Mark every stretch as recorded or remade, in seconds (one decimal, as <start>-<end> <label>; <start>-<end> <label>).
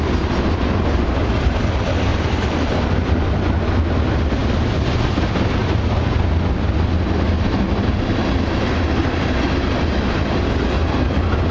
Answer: 0.0-2.1 recorded; 2.1-2.7 remade; 2.7-11.5 recorded